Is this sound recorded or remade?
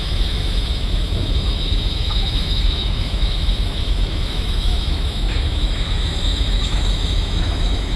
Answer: remade